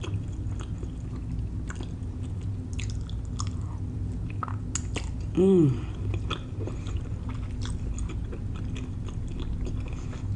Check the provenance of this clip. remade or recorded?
recorded